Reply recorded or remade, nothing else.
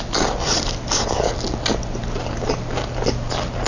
recorded